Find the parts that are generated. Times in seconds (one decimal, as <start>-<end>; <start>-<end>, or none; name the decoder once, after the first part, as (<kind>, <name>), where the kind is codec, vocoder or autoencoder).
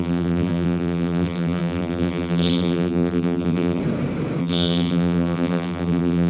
0.0-3.8 (vocoder, BigVGAN v2); 4.4-6.3